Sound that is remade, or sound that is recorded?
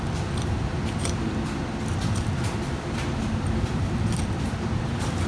remade